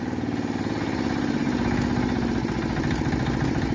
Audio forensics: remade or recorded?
recorded